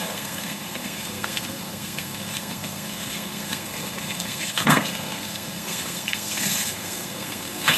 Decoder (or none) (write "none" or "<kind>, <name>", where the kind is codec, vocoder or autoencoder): codec, SNAC